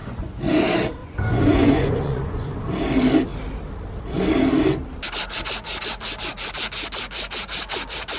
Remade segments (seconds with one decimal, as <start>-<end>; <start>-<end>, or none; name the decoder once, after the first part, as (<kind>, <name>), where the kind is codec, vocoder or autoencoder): 0.0-0.5 (vocoder, Vocos); 1.0-2.6